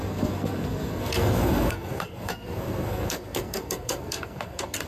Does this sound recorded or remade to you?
remade